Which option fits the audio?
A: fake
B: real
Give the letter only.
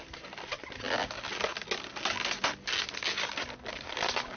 B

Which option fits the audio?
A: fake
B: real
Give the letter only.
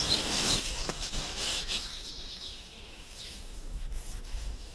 A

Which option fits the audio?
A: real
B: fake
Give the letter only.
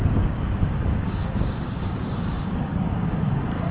B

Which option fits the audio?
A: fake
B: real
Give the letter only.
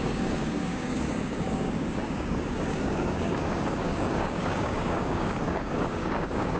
A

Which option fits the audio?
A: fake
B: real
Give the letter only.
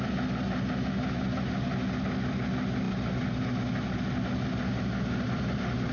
B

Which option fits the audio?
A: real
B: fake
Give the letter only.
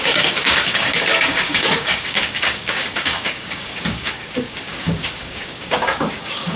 B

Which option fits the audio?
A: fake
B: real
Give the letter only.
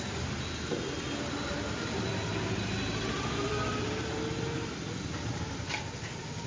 B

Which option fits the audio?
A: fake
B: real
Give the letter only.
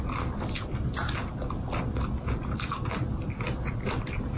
B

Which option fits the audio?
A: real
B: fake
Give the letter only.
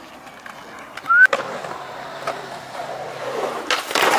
A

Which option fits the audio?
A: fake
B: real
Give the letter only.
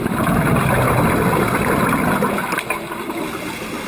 B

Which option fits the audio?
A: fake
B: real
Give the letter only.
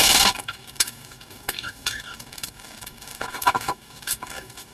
A